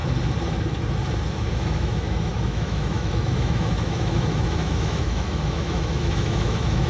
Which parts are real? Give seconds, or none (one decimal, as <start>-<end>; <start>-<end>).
0.0-1.3